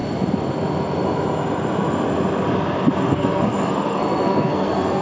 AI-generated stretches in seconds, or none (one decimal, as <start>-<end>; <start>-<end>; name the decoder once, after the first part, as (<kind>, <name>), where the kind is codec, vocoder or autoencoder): 3.0-5.0 (codec, SNAC)

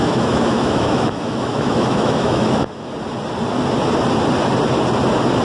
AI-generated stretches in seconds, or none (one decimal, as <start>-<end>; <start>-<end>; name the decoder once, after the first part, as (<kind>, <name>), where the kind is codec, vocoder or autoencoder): 0.0-2.9 (autoencoder, DAC-VAE)

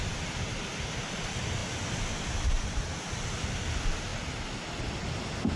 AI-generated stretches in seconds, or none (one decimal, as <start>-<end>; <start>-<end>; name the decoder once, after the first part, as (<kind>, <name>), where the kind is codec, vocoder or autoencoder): none

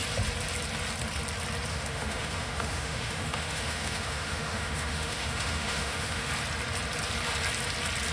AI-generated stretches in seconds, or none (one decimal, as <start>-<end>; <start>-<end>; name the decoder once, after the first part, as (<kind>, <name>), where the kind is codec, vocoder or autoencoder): 1.7-6.3 (autoencoder, DAC-VAE)

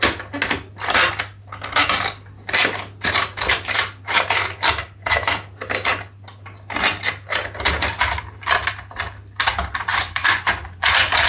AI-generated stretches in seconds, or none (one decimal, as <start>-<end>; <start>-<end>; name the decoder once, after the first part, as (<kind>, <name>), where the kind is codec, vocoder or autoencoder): 9.9-11.3 (vocoder, Vocos)

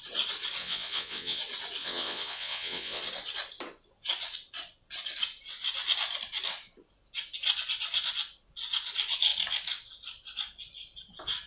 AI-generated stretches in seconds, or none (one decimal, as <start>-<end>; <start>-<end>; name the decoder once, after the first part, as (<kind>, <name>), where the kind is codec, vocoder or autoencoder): 0.6-1.4 (vocoder, WaveNeXt); 1.8-3.0